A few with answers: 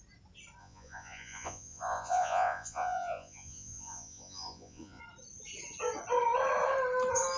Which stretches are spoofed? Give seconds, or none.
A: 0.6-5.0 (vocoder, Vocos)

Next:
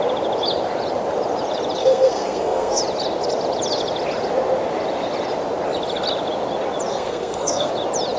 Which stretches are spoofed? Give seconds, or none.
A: 1.8-2.8 (codec, SNAC); 6.9-7.7

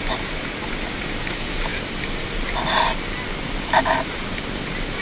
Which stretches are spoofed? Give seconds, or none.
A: none

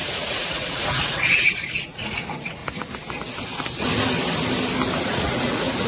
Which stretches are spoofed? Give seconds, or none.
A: 0.0-2.6 (vocoder, Vocos); 5.0-5.9

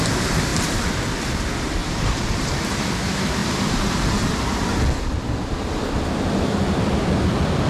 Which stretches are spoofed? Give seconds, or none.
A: 1.8-2.8 (vocoder, BigVGAN v2)

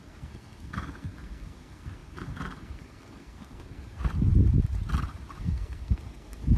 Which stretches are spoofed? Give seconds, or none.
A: 0.0-4.3 (codec, SNAC); 5.4-6.6